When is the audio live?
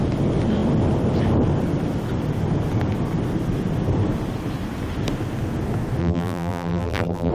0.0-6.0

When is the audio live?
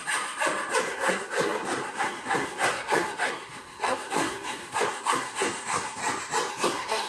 0.0-0.8; 6.0-6.5